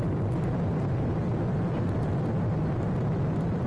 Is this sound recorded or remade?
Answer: remade